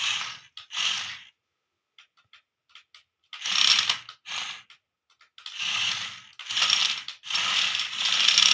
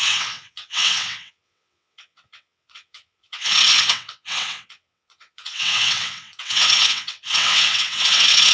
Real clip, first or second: first